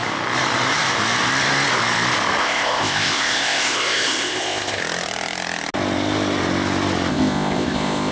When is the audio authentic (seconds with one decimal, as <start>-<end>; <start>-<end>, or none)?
0.0-2.4; 4.8-7.1